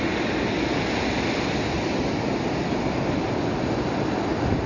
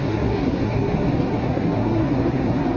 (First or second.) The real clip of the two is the first